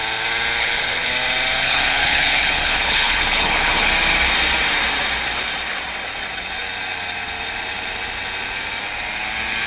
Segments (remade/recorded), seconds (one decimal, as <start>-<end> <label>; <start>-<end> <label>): 0.0-0.6 recorded; 0.6-1.1 remade; 1.1-1.6 recorded; 1.6-3.9 remade; 3.9-9.7 recorded